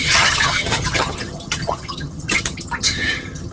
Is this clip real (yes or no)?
no